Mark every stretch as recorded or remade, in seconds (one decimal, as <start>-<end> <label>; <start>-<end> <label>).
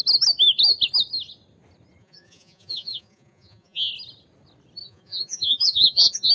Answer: 0.0-2.0 recorded; 2.0-3.9 remade; 3.9-4.8 recorded; 4.8-6.3 remade